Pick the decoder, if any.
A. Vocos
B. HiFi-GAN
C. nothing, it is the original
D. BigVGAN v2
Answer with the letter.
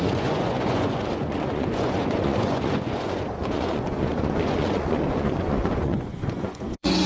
A